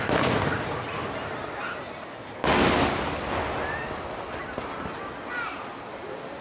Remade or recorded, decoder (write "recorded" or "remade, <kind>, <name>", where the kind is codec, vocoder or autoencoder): recorded